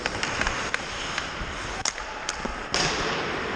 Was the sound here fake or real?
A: real